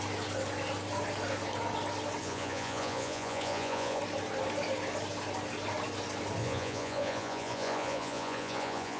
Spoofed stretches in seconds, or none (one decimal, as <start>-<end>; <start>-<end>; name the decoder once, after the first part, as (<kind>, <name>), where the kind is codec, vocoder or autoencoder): 2.2-4.0 (vocoder, Vocos); 6.4-9.0